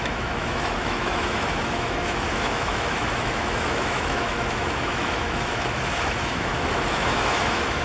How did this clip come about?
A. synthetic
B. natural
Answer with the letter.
A